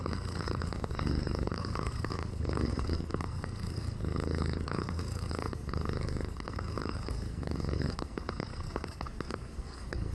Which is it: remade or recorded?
remade